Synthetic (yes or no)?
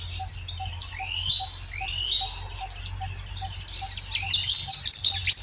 no